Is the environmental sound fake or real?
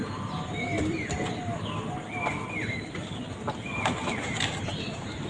real